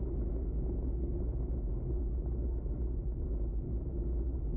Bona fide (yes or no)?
yes